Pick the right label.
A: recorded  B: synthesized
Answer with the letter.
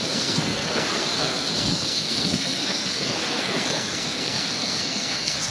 B